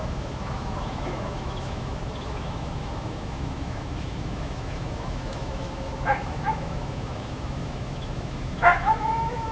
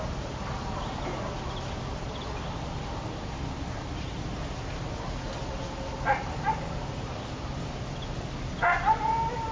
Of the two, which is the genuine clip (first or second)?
second